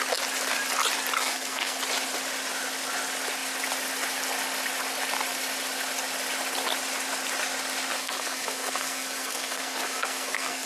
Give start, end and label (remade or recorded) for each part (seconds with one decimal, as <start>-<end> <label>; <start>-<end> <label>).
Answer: 0.0-1.2 recorded; 1.2-1.8 remade; 1.8-8.0 recorded; 8.0-10.7 remade